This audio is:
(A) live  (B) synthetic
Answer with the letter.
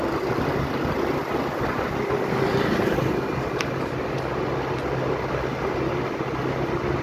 A